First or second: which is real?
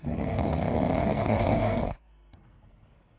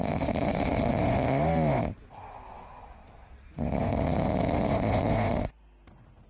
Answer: second